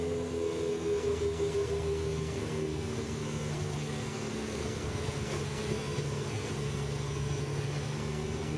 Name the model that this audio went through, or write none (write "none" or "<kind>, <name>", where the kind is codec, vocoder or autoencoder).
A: codec, SNAC